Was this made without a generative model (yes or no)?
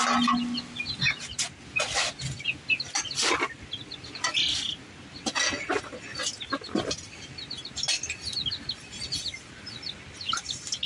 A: yes